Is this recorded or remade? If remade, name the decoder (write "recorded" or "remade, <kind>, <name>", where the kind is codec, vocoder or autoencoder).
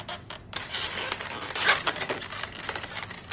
recorded